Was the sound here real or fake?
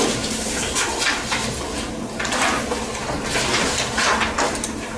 real